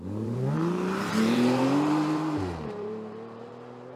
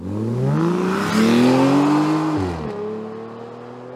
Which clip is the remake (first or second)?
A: first